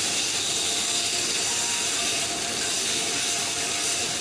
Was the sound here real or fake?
real